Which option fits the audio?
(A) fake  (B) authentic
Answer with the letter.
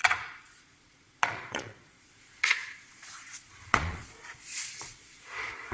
A